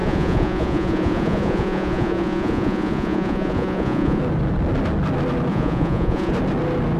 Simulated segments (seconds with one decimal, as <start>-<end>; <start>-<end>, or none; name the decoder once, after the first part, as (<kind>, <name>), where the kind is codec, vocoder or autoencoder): 0.0-4.2 (vocoder, Vocos); 5.5-6.3